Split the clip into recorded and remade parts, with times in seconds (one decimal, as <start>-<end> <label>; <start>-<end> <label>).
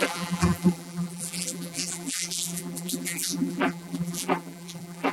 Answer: 0.0-5.1 remade